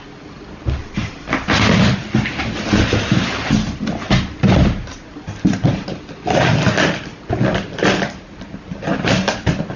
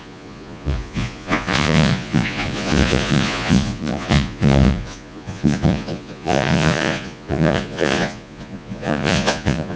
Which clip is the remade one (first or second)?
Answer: second